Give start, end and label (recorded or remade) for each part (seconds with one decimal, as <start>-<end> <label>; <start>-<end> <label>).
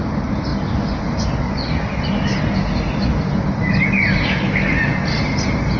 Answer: 0.0-5.8 recorded